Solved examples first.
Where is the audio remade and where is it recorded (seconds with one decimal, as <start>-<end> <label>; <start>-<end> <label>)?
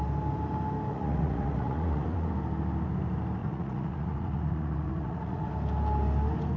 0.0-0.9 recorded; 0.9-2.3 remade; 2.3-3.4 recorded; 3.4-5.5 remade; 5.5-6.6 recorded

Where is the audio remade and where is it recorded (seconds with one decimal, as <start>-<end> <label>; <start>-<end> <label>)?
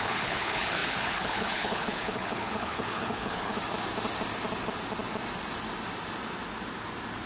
0.0-3.6 remade; 3.6-7.3 recorded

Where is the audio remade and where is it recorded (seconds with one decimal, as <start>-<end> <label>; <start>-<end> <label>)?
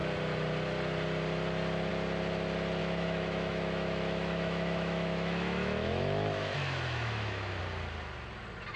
0.0-2.8 recorded; 2.8-7.6 remade; 7.6-8.8 recorded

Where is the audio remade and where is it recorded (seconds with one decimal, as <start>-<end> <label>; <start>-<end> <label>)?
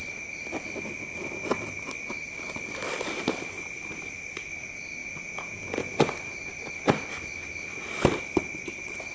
0.0-5.0 recorded; 5.0-5.9 remade; 5.9-9.1 recorded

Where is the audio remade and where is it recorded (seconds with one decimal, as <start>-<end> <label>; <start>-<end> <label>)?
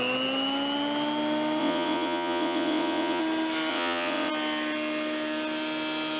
0.0-1.6 recorded; 1.6-3.2 remade; 3.2-3.7 recorded; 3.7-4.3 remade; 4.3-6.2 recorded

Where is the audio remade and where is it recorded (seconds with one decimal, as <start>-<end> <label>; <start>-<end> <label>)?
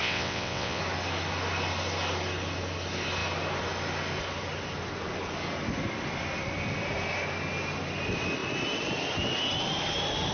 0.0-0.8 remade; 0.8-10.3 recorded